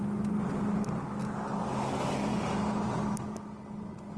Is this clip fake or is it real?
real